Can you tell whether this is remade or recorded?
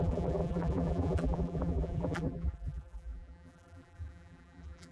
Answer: remade